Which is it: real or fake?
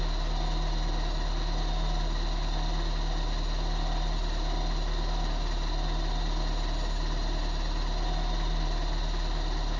real